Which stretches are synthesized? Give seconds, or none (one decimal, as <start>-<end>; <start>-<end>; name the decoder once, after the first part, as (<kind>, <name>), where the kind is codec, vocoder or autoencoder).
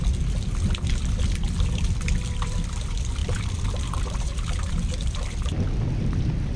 3.2-4.7 (vocoder, BigVGAN v2)